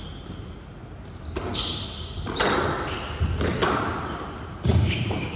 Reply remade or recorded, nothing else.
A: recorded